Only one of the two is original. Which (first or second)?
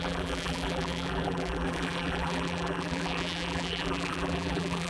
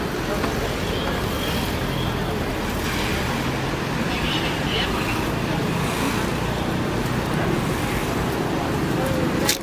second